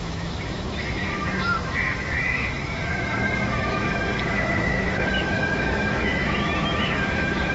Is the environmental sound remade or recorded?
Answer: remade